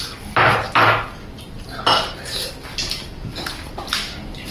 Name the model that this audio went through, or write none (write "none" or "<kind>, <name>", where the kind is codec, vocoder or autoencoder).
none